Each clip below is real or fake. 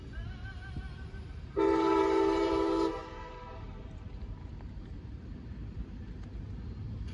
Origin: fake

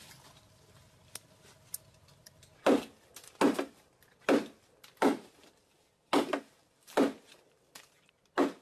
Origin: real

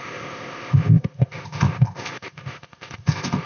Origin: fake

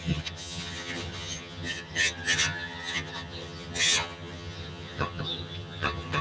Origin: fake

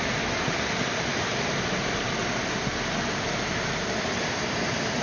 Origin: real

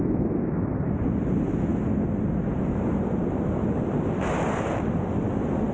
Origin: real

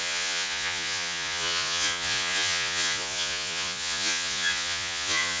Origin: fake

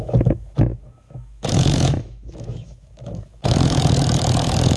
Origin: fake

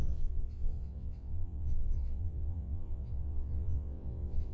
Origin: fake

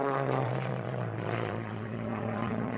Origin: fake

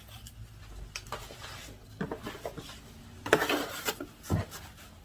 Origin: fake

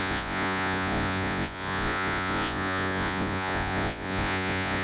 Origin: fake